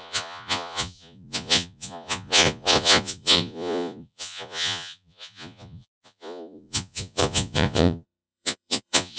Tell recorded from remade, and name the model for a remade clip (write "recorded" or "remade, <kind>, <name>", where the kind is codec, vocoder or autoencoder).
remade, vocoder, Vocos